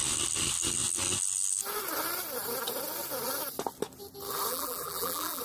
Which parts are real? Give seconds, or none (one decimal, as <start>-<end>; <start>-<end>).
0.0-4.5